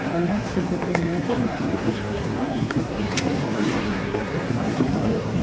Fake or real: fake